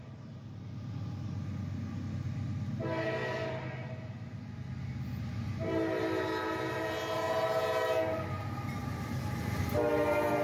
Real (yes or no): yes